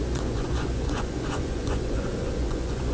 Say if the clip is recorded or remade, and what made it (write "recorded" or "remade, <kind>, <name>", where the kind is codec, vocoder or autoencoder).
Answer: remade, vocoder, Vocos